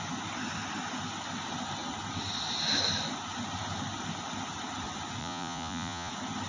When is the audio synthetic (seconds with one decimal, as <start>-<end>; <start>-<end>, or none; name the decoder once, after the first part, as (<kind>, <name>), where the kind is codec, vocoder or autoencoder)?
5.2-6.1 (vocoder, Vocos)